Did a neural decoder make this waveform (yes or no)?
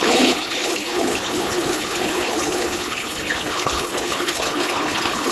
yes